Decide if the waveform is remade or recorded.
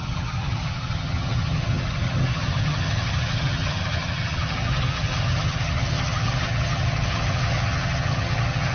remade